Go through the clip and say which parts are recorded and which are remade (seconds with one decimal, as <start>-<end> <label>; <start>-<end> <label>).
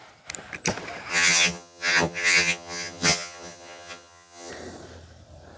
0.0-1.1 recorded; 1.1-4.5 remade; 4.5-5.6 recorded